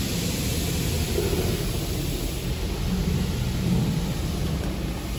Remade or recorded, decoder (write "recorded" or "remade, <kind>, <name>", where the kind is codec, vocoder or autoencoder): recorded